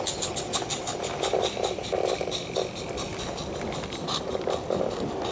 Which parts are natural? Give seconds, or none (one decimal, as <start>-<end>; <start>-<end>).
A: 0.0-5.3